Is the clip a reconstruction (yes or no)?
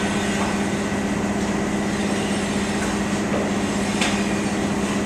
no